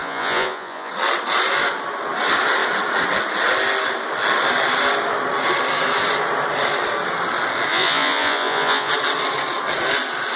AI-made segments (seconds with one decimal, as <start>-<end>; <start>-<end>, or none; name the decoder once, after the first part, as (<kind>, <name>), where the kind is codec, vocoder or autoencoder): 0.0-0.9 (vocoder, Vocos); 7.7-8.9